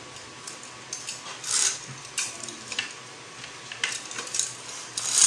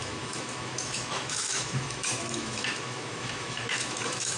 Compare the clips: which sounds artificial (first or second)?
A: second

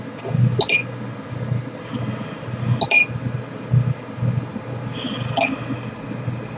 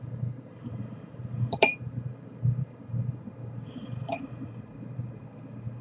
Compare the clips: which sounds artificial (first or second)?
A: second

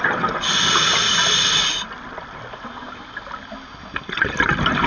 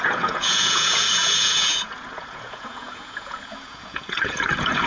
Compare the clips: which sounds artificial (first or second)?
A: second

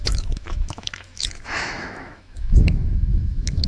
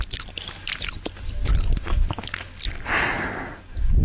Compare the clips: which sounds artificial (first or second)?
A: first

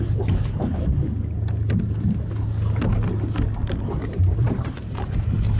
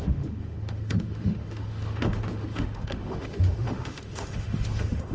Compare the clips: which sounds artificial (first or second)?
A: second